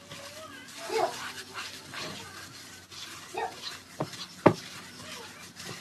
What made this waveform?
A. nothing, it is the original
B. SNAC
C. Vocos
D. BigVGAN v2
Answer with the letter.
A